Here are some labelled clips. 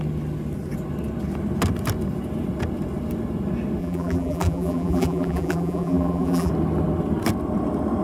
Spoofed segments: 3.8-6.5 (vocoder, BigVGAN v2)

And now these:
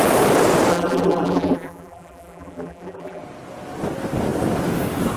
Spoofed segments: 0.7-3.2 (vocoder, BigVGAN v2)

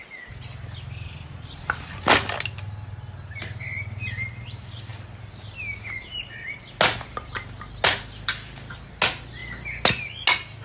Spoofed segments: none